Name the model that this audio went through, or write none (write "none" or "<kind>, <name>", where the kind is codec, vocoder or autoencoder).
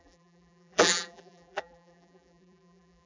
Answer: vocoder, BigVGAN v2